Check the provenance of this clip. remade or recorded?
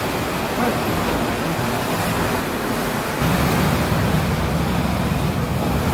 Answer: recorded